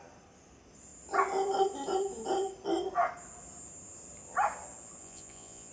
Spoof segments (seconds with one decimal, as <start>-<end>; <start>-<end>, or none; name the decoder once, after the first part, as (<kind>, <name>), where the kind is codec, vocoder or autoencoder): 5.0-5.7 (vocoder, Vocos)

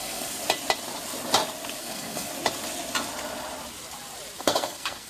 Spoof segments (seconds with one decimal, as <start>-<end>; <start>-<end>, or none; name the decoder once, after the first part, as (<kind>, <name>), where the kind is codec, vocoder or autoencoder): 0.0-0.4 (codec, SNAC); 1.8-2.3; 4.4-5.1

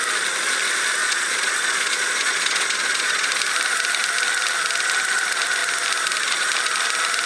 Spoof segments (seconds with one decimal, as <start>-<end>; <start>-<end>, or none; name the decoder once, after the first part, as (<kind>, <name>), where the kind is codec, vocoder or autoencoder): 1.0-3.3 (vocoder, Vocos)

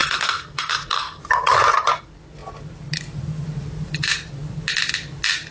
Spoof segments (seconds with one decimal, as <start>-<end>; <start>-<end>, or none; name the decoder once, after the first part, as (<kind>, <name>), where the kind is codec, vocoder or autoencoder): 0.0-1.2 (codec, SNAC)

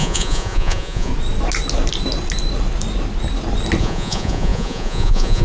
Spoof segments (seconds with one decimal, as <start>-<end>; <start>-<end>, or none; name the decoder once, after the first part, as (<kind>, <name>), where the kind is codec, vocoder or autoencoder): 0.0-1.1 (vocoder, Vocos); 3.8-5.4

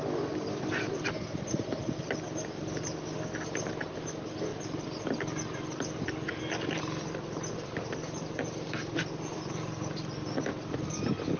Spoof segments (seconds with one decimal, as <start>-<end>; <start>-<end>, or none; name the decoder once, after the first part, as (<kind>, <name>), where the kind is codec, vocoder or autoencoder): none